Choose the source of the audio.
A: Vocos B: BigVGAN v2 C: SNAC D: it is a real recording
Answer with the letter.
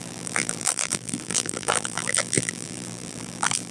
B